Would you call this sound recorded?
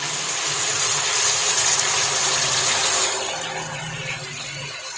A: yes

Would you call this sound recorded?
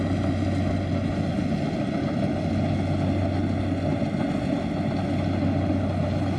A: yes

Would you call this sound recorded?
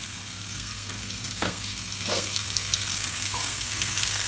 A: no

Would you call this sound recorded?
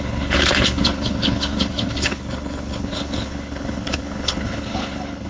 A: no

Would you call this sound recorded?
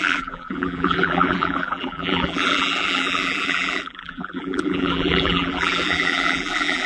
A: no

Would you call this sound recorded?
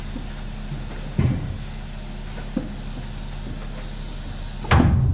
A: yes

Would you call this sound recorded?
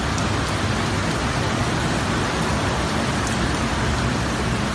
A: yes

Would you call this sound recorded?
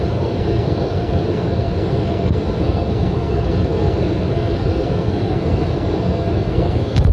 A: no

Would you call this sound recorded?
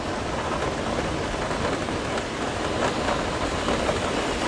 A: yes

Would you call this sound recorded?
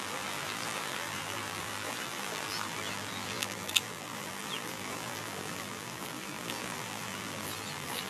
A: no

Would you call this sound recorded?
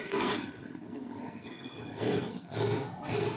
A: no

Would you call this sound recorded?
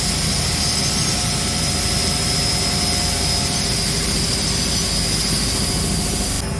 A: yes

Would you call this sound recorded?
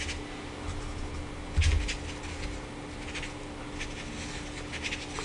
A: yes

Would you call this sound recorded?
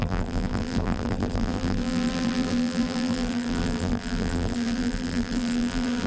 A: no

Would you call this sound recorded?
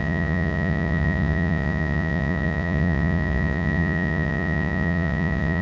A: no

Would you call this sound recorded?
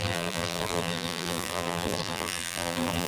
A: no